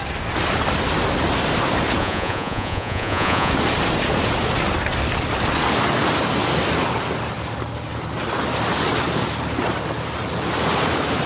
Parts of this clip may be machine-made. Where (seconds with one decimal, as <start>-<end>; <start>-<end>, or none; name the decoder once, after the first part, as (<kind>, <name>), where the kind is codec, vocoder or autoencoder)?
2.0-3.5 (vocoder, Vocos)